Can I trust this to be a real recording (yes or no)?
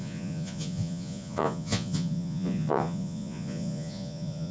no